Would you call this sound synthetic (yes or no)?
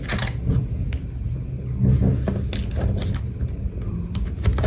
no